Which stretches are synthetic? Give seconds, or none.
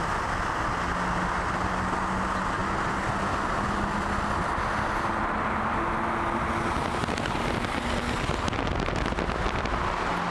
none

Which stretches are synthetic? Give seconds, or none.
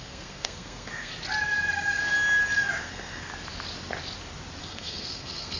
0.0-1.1 (codec, SNAC); 1.7-2.1; 2.8-3.3; 4.6-5.6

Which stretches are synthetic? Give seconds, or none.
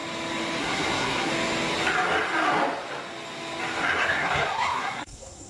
0.6-1.3 (codec, SNAC); 4.0-5.5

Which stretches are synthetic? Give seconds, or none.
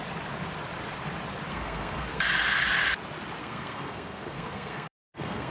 1.5-2.2 (codec, SNAC); 3.4-5.5